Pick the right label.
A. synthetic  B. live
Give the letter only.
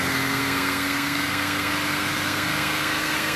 A